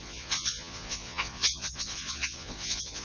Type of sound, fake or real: fake